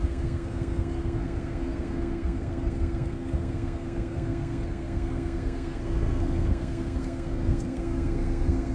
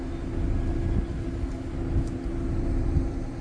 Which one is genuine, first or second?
second